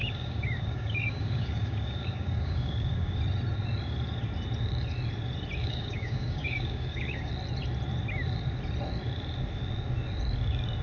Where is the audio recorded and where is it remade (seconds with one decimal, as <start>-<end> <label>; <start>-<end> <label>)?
0.0-3.2 remade; 3.2-5.6 recorded; 5.6-7.3 remade; 7.3-10.8 recorded